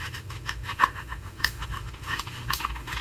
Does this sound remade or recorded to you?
remade